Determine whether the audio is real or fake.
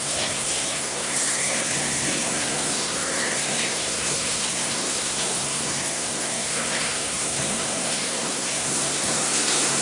fake